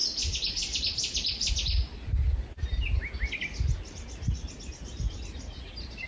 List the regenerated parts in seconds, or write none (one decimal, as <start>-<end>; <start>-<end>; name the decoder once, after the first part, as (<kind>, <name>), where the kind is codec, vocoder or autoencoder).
0.0-1.5 (vocoder, BigVGAN v2)